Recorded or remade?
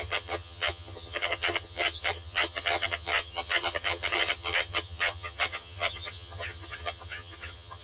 remade